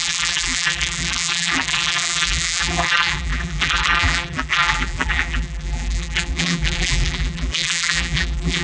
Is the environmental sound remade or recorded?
remade